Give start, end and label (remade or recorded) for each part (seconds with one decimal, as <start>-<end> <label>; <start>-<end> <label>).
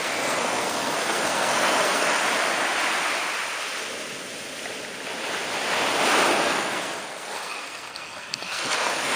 0.0-2.2 remade; 2.2-6.3 recorded; 6.3-9.2 remade